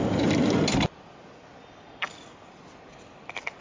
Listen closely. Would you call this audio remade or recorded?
recorded